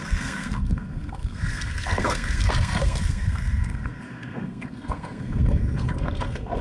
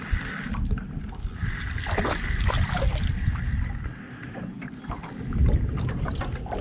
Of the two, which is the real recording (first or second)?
second